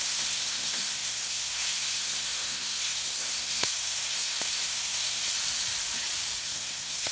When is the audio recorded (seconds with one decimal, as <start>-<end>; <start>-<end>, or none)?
5.2-6.4